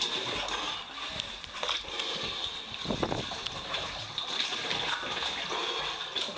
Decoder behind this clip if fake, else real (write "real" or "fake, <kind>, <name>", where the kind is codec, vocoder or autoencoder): real